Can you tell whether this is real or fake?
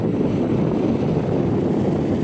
real